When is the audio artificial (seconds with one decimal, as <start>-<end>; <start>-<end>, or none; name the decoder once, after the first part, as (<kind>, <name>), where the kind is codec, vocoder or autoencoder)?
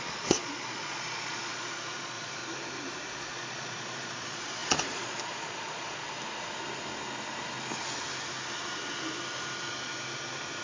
0.0-2.4 (vocoder, Vocos); 3.2-6.0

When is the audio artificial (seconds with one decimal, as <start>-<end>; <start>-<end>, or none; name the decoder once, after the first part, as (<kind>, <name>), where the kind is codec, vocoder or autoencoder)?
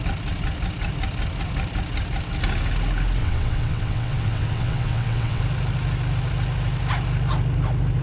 3.2-5.4 (vocoder, WaveNeXt)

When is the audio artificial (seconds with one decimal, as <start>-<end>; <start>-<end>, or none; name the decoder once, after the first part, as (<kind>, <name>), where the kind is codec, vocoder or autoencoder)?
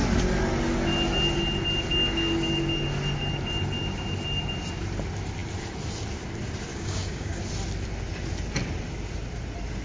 6.7-7.4 (codec, DAC)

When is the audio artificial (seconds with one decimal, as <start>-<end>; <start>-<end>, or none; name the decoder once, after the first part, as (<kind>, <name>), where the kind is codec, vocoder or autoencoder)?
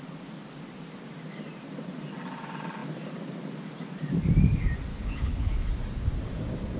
4.9-5.7 (codec, HILCodec)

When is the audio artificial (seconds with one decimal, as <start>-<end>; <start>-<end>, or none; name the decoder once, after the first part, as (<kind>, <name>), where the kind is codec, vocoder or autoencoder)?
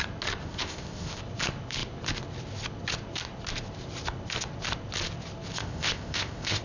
0.4-1.2 (codec, ZipCodec); 5.6-6.6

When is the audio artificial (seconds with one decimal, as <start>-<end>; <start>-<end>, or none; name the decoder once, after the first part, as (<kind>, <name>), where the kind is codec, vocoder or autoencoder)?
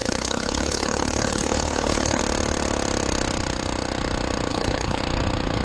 0.0-2.2 (codec, HILCodec); 4.5-5.0